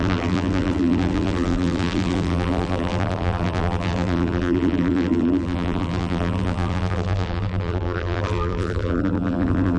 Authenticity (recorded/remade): remade